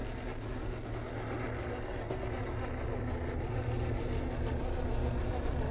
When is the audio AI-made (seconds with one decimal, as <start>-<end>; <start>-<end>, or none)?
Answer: none